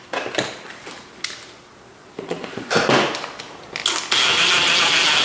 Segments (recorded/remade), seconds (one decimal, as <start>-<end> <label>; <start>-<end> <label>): 0.0-2.0 recorded; 2.0-2.7 remade; 2.7-5.2 recorded